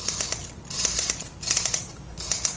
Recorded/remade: recorded